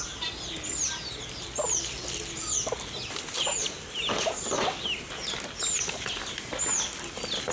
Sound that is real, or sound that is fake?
real